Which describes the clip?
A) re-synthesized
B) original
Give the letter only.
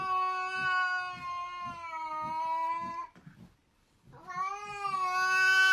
B